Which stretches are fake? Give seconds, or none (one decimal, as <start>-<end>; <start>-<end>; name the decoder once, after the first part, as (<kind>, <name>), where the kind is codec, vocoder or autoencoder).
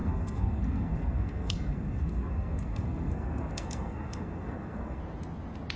0.0-5.0 (codec, SNAC)